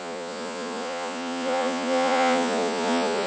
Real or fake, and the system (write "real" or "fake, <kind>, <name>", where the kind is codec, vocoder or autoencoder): fake, vocoder, Vocos